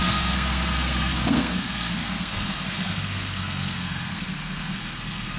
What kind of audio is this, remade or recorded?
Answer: remade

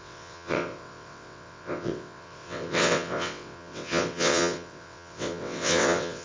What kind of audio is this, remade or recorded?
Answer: remade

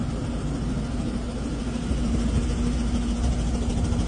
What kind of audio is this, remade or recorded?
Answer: recorded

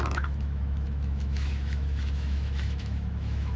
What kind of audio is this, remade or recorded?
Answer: remade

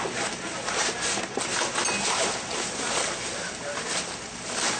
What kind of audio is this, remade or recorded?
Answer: recorded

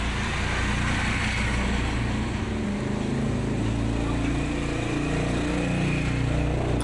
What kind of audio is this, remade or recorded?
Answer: recorded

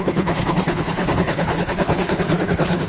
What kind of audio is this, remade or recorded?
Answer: remade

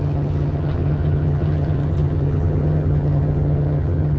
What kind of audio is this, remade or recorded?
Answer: remade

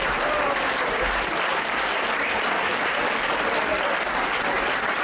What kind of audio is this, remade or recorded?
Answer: recorded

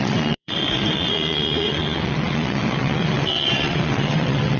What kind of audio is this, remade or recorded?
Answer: remade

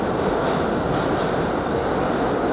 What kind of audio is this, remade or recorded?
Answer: recorded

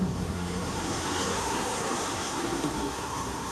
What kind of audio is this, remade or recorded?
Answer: remade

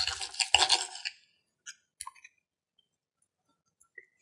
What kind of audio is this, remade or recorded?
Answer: recorded